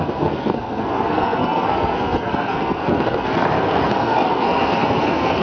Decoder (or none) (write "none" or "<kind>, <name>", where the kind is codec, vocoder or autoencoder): codec, SNAC